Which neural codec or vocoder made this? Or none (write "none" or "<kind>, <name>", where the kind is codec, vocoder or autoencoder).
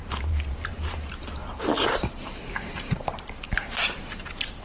vocoder, BigVGAN v2